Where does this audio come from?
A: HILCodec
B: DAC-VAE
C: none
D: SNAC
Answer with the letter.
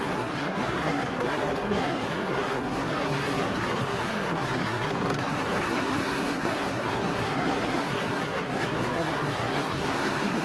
D